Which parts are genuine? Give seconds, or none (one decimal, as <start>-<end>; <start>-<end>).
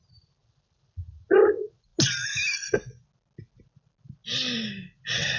0.0-5.4